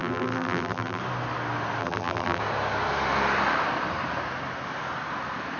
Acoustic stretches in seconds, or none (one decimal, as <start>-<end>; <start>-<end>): 1.0-1.8; 2.4-5.6